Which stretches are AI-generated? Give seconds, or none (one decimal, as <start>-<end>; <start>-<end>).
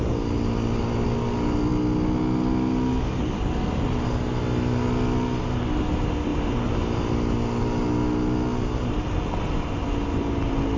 none